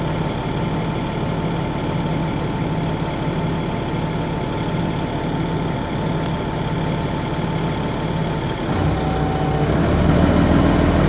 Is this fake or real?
real